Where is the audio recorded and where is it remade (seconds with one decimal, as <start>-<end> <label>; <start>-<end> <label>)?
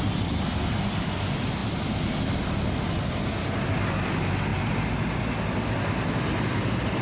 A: 0.0-4.5 recorded; 4.5-5.2 remade; 5.2-7.0 recorded